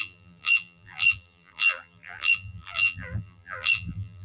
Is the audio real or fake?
fake